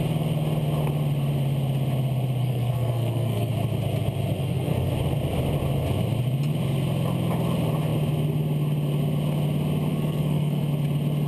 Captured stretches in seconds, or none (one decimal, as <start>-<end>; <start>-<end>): 0.0-2.4; 3.5-4.4; 4.9-9.9; 10.6-11.3